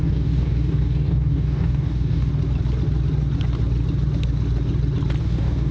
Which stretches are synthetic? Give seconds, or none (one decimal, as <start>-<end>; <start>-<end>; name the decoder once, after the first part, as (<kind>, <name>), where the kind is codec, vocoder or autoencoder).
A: 0.0-2.3 (codec, DAC); 5.2-5.7